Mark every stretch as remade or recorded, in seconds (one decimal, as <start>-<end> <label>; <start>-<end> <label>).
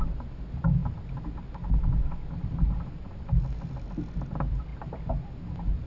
0.0-5.9 recorded